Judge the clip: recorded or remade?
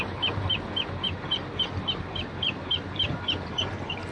recorded